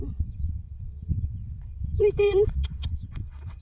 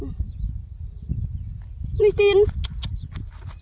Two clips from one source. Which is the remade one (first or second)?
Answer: first